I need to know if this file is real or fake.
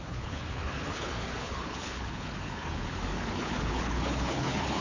fake